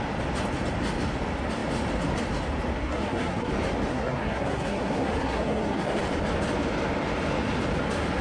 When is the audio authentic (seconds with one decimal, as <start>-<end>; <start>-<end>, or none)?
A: 0.0-2.8; 3.5-3.9; 6.0-8.2